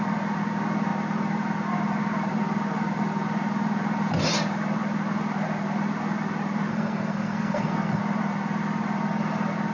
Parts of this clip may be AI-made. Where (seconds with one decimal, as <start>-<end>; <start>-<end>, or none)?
6.7-8.0